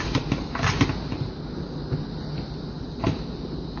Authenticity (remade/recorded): recorded